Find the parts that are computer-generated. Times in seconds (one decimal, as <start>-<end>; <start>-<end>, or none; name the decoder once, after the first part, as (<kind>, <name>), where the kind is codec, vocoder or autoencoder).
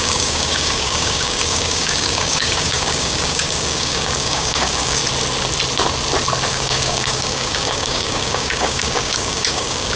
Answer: 0.0-5.0 (codec, DAC); 6.5-10.0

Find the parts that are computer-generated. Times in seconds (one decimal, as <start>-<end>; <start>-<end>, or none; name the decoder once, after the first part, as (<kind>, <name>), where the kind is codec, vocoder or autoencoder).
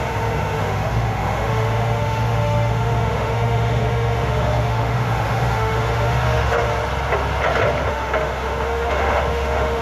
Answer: 0.0-6.7 (autoencoder, DAC-VAE); 7.9-9.8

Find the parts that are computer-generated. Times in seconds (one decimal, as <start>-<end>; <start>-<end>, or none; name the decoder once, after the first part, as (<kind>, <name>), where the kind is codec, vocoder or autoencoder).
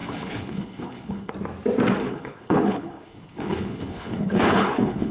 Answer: 0.0-1.3 (codec, HILCodec); 2.0-5.1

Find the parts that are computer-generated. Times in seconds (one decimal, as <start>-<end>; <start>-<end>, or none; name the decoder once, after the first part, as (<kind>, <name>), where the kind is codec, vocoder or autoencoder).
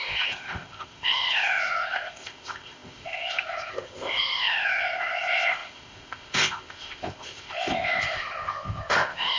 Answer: 0.0-9.4 (codec, ZipCodec)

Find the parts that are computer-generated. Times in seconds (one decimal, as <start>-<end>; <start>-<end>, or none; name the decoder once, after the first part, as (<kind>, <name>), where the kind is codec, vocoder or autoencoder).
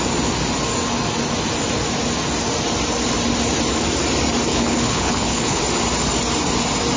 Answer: 4.5-5.6 (codec, HILCodec)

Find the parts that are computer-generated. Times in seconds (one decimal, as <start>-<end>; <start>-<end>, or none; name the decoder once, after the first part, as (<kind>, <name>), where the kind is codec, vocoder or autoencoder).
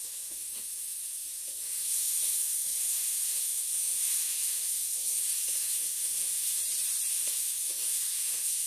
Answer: 0.0-6.6 (autoencoder, DAC-VAE); 7.1-8.7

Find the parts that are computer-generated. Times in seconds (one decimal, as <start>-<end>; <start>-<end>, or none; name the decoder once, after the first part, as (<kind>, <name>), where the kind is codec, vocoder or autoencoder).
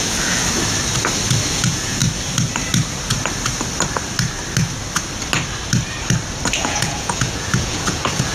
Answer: 0.0-0.4 (vocoder, Vocos); 1.5-2.0; 6.6-8.3